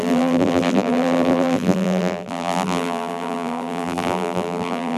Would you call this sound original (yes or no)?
no